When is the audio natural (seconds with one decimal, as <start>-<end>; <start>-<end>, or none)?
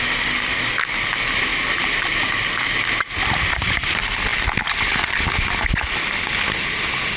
0.0-7.2